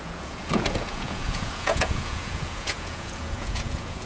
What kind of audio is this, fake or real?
fake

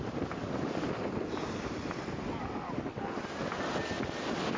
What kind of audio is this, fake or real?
real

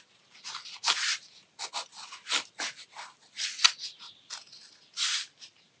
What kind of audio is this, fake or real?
real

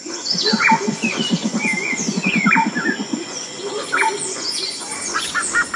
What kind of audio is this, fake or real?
fake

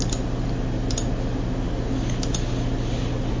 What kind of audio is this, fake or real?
real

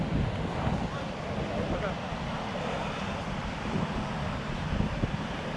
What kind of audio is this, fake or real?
real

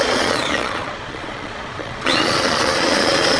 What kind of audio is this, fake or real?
fake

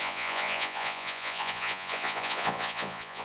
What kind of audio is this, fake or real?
fake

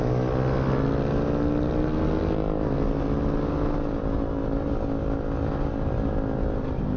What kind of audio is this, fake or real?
real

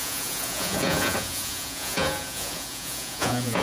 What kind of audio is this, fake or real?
fake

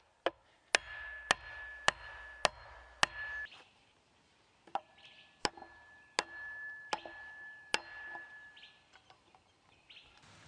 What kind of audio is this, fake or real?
real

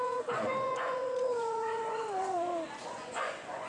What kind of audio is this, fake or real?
fake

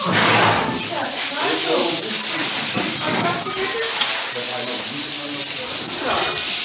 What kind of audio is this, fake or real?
real